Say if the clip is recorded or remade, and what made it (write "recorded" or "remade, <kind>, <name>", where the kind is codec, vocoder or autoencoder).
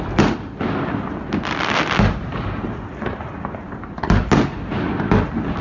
recorded